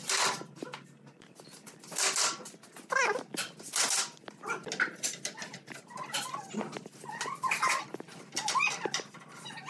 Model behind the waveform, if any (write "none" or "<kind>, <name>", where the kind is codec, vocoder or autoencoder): none